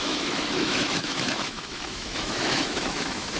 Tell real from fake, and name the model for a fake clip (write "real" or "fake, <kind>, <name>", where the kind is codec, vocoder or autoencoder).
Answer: fake, autoencoder, DAC-VAE